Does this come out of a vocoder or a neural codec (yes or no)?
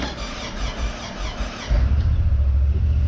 no